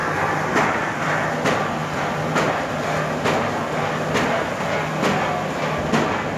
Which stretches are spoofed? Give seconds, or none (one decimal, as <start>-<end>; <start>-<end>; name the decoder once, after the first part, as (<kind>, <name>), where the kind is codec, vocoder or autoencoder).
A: none